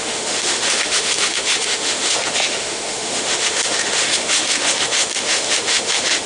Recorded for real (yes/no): no